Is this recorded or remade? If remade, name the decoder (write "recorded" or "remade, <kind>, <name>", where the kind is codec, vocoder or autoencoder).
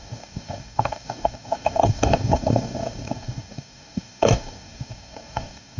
remade, codec, DAC